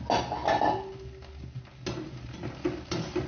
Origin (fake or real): real